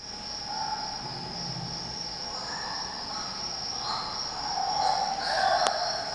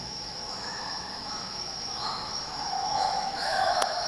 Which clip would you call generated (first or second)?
second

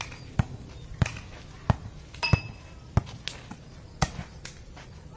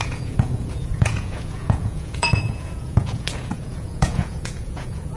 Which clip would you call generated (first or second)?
second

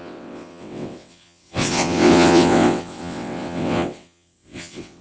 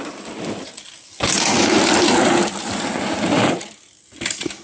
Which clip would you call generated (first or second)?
first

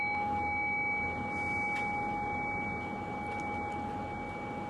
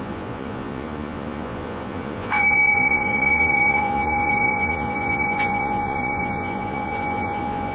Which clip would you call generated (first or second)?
second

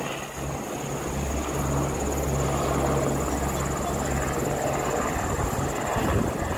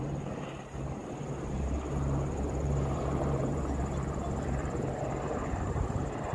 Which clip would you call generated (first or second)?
second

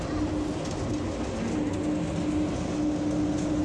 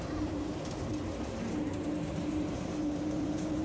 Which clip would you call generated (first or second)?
second